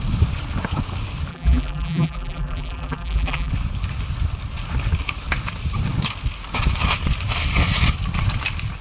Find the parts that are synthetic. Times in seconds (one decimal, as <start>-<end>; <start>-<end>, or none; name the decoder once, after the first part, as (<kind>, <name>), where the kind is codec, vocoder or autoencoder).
1.3-3.5 (vocoder, BigVGAN v2)